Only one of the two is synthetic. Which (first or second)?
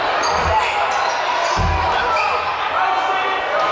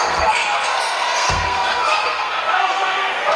second